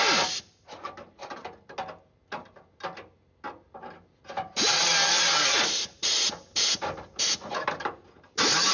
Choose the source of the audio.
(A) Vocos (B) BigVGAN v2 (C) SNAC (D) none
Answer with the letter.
D